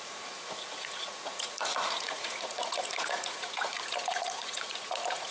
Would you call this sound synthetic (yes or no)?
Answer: yes